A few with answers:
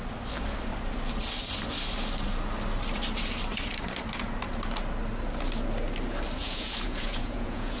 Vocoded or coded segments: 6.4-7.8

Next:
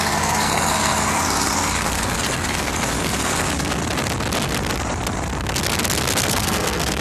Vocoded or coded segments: 0.0-3.8; 6.3-7.0

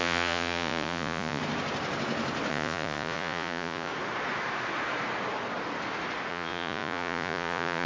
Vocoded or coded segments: 0.0-1.4; 2.5-3.9; 6.3-7.9

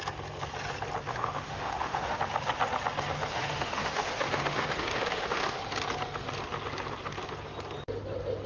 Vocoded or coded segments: 1.1-2.2; 3.3-5.6